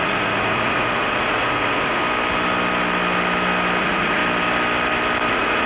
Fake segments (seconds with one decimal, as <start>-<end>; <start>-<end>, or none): 0.0-2.0; 3.8-4.2; 5.3-5.7